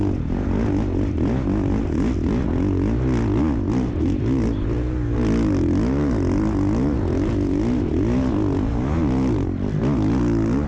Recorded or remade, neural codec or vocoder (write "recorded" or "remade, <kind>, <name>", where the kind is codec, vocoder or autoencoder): recorded